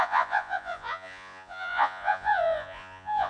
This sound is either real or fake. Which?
fake